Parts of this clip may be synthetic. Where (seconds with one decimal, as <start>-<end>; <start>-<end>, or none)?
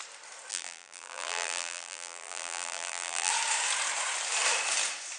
0.5-3.3